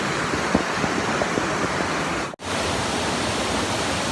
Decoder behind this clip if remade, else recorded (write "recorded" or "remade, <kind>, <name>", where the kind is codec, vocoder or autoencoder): recorded